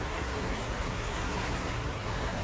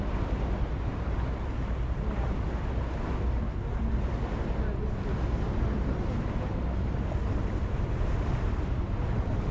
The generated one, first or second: first